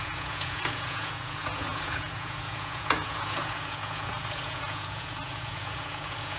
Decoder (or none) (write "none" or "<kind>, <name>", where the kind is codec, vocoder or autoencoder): vocoder, Vocos